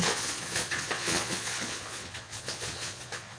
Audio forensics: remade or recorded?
remade